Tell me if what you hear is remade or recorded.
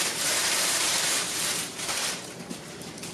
remade